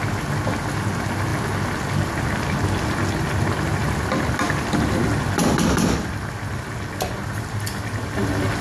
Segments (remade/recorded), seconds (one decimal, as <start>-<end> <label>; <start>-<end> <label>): 0.0-8.6 recorded

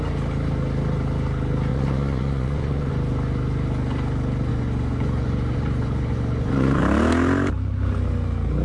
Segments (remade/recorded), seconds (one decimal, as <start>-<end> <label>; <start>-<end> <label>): 0.0-1.7 recorded; 1.7-2.9 remade; 2.9-4.5 recorded; 4.5-6.8 remade; 6.8-8.6 recorded

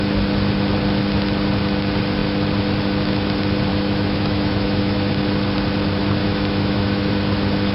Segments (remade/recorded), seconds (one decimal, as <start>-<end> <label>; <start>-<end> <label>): 0.0-3.7 recorded; 3.7-5.1 remade; 5.1-6.2 recorded; 6.2-7.1 remade; 7.1-7.7 recorded

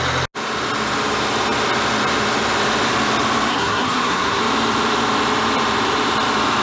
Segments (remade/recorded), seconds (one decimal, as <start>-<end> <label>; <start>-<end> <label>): 0.0-3.5 recorded; 3.5-4.4 remade; 4.4-6.6 recorded